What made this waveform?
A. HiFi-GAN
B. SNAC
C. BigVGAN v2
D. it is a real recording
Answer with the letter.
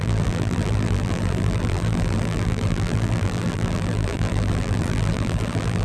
C